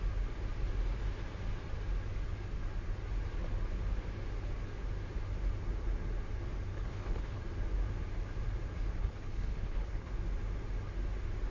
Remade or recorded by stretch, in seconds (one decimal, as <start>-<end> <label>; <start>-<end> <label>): 0.0-6.7 recorded; 6.7-7.4 remade; 7.4-9.0 recorded; 9.0-10.1 remade; 10.1-11.5 recorded